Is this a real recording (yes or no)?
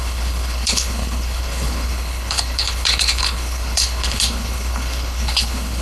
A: no